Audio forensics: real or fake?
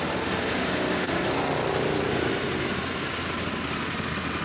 real